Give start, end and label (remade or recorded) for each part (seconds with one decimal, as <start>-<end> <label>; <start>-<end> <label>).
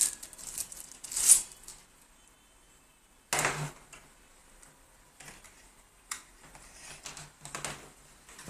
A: 0.0-4.4 recorded; 4.4-6.8 remade; 6.8-8.5 recorded